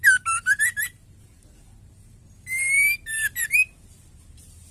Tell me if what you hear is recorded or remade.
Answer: recorded